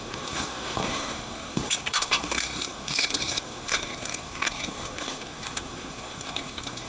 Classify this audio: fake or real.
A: fake